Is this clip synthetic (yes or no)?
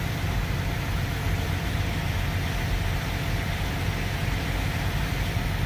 no